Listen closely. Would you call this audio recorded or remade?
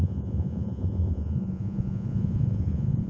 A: remade